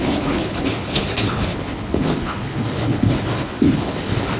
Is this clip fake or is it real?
fake